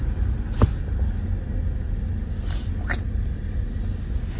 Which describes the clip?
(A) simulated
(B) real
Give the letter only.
B